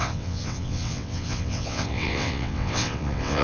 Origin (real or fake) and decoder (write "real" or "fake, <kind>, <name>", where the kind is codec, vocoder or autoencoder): fake, vocoder, WaveNeXt